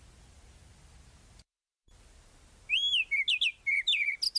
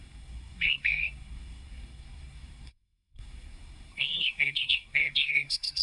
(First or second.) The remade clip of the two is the second